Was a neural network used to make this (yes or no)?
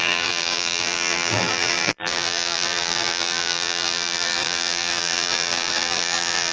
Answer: yes